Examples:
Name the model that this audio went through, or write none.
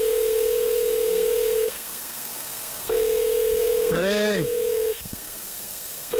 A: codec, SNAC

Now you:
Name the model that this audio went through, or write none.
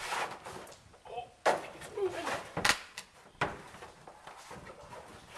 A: none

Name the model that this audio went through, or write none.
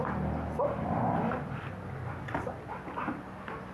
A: none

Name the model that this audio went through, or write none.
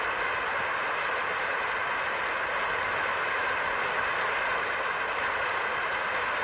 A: none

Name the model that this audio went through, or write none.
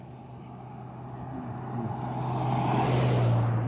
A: none